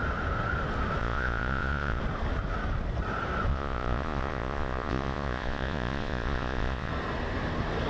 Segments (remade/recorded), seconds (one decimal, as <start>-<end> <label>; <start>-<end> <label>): 0.0-1.0 recorded; 1.0-2.0 remade; 2.0-3.5 recorded; 3.5-6.9 remade; 6.9-7.9 recorded